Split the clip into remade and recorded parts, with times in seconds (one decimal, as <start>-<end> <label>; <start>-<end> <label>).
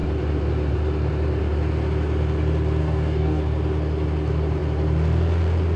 0.0-2.8 recorded; 2.8-3.4 remade; 3.4-5.8 recorded